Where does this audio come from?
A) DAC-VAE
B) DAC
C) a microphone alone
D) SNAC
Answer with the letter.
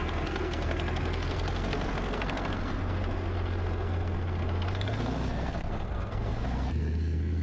D